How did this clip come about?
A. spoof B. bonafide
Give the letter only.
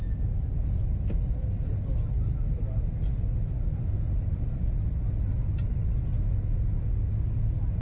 B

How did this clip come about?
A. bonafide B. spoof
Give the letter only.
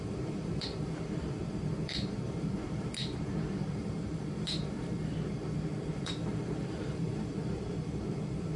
B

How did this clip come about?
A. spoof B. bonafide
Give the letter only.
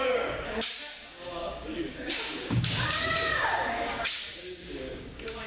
A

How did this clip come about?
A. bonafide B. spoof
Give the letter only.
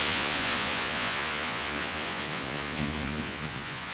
B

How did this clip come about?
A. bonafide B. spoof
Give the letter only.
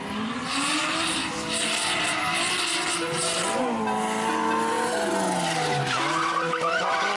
A